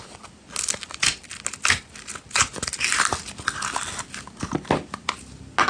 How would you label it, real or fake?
real